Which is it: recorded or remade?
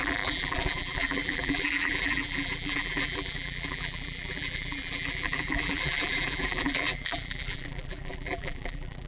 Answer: remade